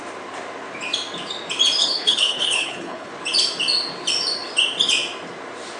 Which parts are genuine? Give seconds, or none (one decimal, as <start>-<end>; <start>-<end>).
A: 0.0-1.8; 3.1-5.8